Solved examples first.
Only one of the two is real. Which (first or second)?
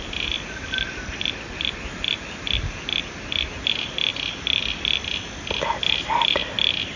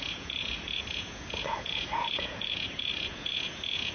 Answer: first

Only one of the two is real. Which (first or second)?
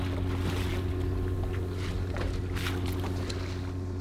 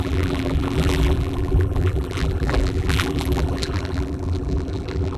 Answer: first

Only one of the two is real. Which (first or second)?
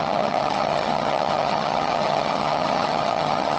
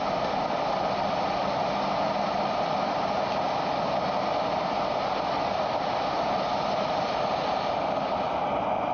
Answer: second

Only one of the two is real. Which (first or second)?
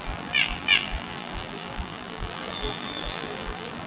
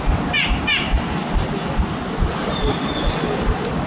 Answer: second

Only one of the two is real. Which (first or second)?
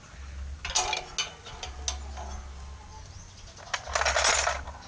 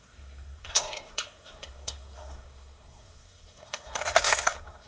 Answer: first